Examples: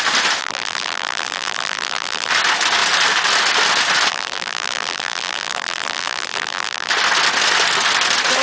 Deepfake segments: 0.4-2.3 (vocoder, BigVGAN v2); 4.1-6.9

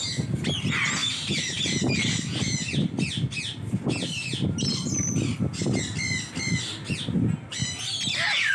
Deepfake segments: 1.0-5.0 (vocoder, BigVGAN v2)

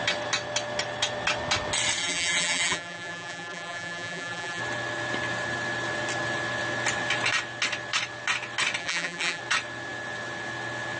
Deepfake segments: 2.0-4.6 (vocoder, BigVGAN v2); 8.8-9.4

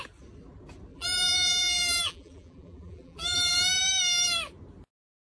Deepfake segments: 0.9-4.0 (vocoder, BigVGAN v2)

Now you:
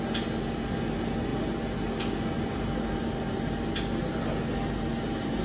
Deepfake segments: none